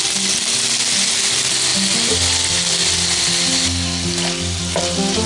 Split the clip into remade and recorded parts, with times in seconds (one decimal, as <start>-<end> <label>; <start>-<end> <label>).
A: 0.0-5.3 recorded